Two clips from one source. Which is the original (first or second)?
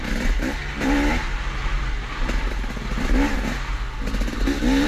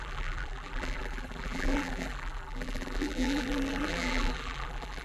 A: first